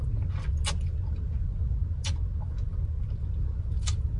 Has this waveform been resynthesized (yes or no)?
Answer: no